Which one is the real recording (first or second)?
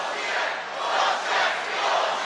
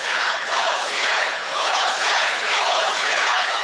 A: first